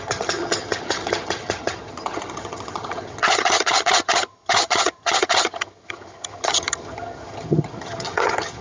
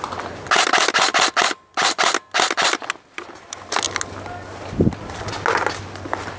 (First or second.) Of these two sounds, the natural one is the second